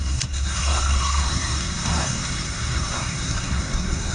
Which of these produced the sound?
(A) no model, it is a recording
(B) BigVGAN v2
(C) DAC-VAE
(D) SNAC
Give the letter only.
D